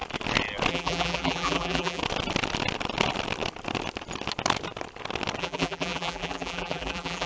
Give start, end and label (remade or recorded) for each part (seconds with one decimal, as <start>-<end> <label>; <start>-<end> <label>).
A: 0.0-0.7 recorded; 0.7-2.0 remade; 2.0-5.4 recorded; 5.4-7.3 remade